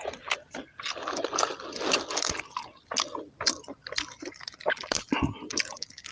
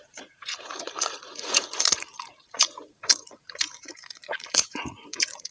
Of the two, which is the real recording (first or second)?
first